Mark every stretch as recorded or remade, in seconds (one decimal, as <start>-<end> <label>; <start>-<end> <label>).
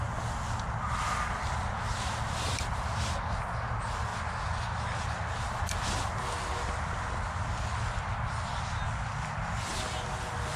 0.0-10.6 recorded